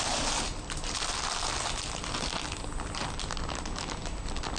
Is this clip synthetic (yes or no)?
no